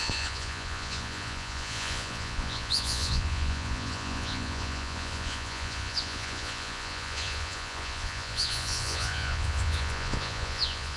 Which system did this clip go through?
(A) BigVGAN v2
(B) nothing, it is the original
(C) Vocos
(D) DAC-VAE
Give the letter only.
C